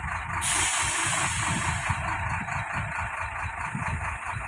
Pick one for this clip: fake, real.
real